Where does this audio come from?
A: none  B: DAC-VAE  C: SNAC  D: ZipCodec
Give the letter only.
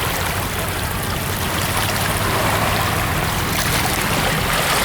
A